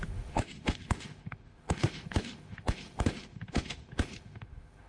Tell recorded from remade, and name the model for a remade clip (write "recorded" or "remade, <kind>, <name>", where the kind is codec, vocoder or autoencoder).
remade, autoencoder, DAC-VAE